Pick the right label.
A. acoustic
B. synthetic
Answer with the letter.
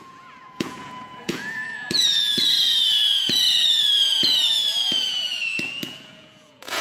B